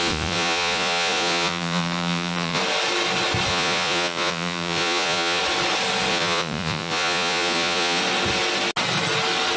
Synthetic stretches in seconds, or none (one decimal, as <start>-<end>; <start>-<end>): 0.0-2.6; 3.5-5.4; 6.1-8.0